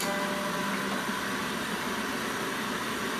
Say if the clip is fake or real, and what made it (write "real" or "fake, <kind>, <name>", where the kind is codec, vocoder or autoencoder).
real